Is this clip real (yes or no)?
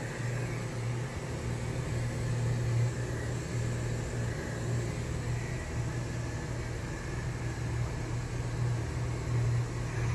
yes